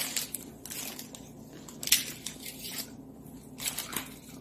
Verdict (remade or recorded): recorded